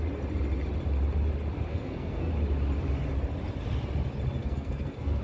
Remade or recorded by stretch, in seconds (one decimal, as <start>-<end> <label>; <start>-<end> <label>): 0.0-1.7 recorded; 1.7-2.3 remade; 2.3-4.4 recorded; 4.4-5.2 remade